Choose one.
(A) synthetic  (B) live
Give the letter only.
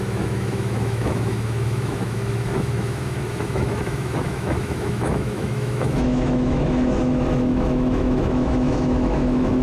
A